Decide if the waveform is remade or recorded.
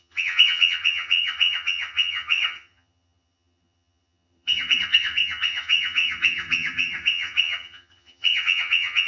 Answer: remade